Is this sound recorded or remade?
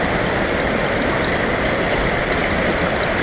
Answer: remade